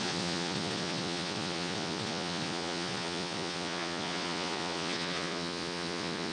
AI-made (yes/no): yes